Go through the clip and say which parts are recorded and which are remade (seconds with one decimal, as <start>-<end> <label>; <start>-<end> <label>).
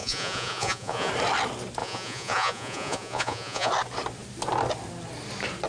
0.0-1.1 remade; 1.1-1.8 recorded; 1.8-3.7 remade; 3.7-5.7 recorded